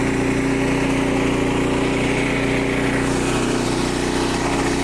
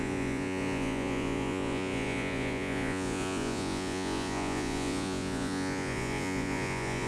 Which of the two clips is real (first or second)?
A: first